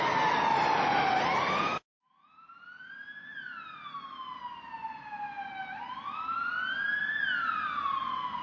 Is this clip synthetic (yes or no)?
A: no